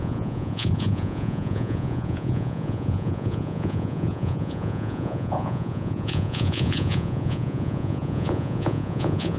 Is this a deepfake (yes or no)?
yes